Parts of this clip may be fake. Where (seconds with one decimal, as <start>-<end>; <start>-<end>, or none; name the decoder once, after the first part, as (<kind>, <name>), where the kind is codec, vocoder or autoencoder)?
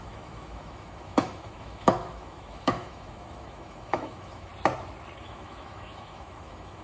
0.0-4.5 (autoencoder, DAC-VAE); 5.2-6.8